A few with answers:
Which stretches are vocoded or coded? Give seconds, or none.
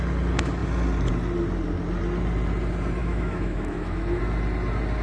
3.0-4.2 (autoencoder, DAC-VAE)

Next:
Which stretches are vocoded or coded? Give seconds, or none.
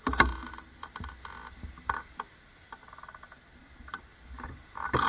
0.0-0.5 (vocoder, BigVGAN v2); 3.6-4.1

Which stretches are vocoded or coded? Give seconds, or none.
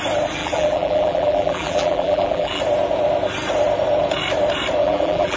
0.4-2.6 (vocoder, BigVGAN v2); 4.8-5.4